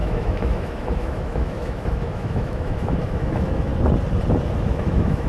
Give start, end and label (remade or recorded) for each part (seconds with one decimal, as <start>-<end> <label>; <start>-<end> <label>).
0.0-3.7 remade; 3.7-4.6 recorded; 4.6-5.3 remade